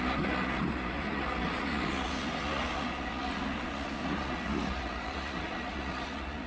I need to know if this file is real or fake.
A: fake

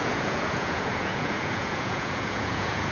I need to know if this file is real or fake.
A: fake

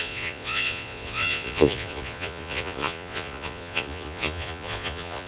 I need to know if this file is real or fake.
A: fake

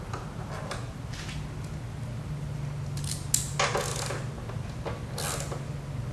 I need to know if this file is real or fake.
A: real